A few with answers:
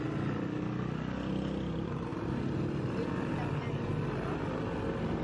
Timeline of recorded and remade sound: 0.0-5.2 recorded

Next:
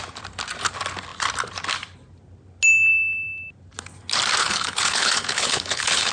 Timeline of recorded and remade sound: 0.0-4.4 recorded; 4.4-6.1 remade